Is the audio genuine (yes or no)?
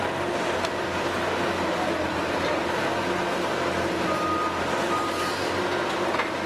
yes